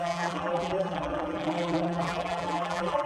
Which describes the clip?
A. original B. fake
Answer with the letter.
B